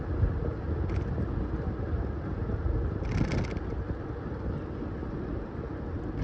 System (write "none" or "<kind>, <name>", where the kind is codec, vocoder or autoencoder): none